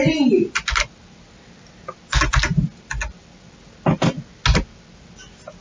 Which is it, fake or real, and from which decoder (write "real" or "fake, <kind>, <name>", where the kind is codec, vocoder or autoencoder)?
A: real